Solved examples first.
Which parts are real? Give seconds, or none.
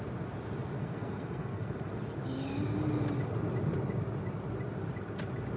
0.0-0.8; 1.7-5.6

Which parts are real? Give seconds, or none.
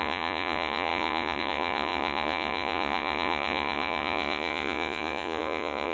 none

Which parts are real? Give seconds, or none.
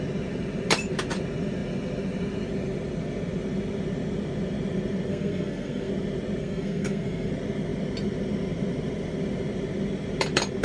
0.0-5.1; 5.9-6.4; 7.3-10.6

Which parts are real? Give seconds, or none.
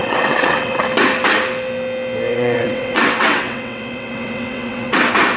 0.8-2.3; 5.0-5.4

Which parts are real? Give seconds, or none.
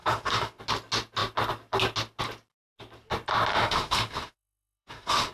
0.6-3.5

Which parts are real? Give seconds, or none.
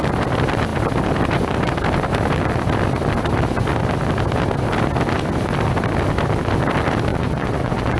0.0-7.1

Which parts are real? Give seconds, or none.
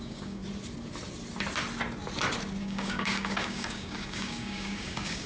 0.4-2.6